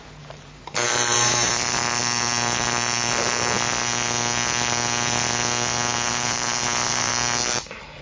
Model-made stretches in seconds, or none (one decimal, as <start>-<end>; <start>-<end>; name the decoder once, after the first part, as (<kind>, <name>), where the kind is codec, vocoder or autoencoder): 0.0-1.8 (vocoder, BigVGAN v2); 6.1-7.1